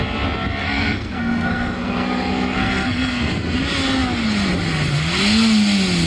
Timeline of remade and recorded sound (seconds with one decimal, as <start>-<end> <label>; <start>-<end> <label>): 0.0-0.6 recorded; 0.6-3.3 remade; 3.3-6.1 recorded